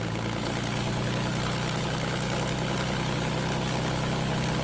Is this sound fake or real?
real